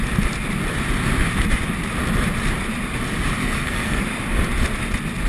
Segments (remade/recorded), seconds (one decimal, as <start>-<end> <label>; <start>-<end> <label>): 0.0-3.4 recorded; 3.4-4.0 remade; 4.0-5.3 recorded